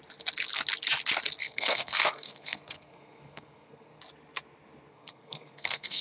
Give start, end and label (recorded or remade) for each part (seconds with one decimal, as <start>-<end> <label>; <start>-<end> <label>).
0.0-1.4 recorded; 1.4-4.0 remade; 4.0-4.9 recorded; 4.9-6.0 remade